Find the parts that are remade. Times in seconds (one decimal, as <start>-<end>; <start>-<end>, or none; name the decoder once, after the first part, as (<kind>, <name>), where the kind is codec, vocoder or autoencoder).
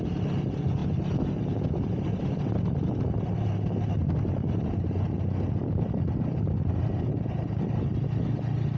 none